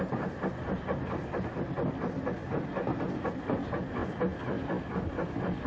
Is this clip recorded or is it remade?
recorded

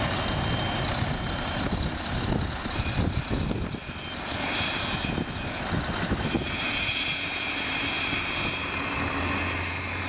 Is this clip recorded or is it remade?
recorded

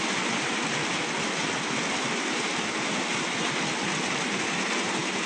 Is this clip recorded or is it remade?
recorded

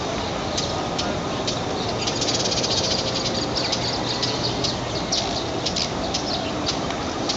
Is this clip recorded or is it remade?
recorded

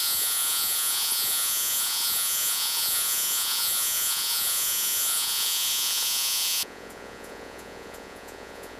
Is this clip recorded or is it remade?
remade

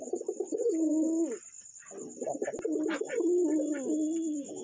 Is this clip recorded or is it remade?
recorded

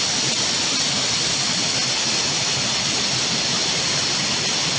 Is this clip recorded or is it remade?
recorded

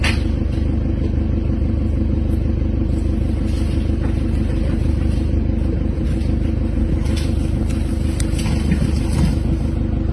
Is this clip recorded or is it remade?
recorded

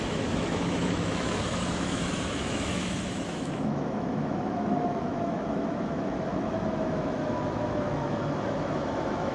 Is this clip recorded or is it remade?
remade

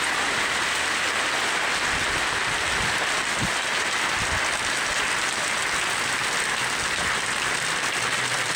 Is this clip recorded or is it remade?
recorded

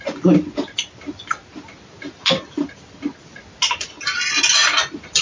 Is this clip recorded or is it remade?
recorded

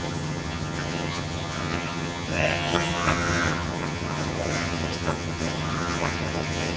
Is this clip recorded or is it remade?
remade